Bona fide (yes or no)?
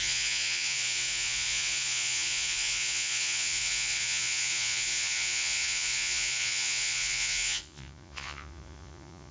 no